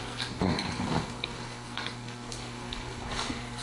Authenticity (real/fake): fake